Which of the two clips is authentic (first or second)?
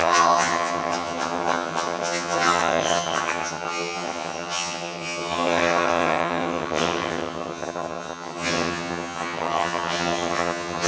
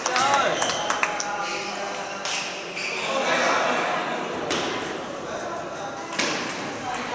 second